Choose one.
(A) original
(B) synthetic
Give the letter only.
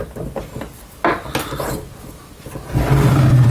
A